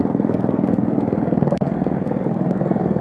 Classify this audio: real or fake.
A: fake